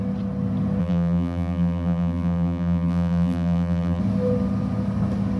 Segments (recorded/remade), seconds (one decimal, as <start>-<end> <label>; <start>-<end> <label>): 0.0-0.8 recorded; 0.8-4.0 remade; 4.0-5.4 recorded